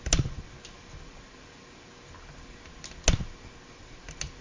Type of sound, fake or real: real